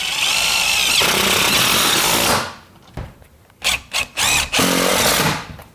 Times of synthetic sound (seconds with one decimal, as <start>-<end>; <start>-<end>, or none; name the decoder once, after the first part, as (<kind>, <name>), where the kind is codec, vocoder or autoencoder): none